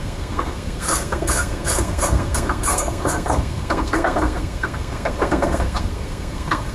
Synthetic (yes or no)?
yes